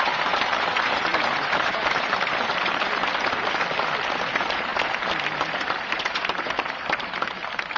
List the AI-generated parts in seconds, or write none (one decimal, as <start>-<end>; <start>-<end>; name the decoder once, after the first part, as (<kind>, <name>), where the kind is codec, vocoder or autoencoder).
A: 0.0-3.1 (vocoder, BigVGAN v2); 4.3-7.8